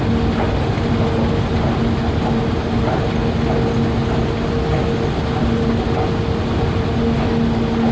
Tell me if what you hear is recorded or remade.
recorded